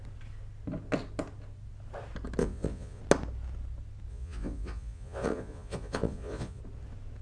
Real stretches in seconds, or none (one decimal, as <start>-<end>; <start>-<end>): 0.0-2.4; 3.0-4.1; 6.6-7.2